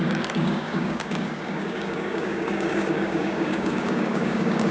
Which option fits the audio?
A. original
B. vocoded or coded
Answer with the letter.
B